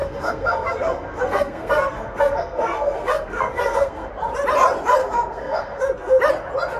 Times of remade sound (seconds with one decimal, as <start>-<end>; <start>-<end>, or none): 0.0-4.1; 5.0-6.2